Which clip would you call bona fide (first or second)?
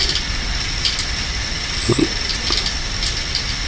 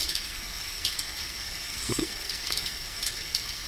first